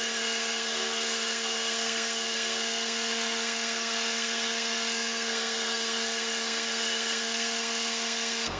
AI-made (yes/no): yes